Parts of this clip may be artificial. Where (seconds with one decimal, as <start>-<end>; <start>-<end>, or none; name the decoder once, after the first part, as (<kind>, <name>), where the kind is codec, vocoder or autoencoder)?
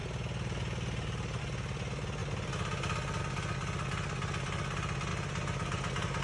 none